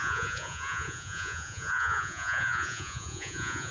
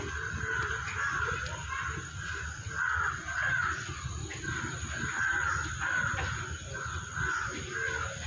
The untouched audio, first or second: second